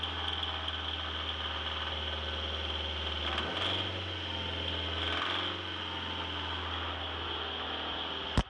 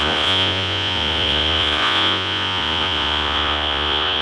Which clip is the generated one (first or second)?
second